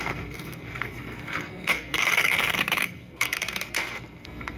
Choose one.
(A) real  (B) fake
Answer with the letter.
B